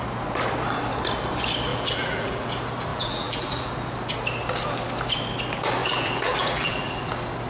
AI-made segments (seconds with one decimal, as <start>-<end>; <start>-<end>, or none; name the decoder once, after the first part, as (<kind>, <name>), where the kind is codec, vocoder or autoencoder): 1.7-2.5 (vocoder, BigVGAN v2); 2.9-3.7; 5.8-7.1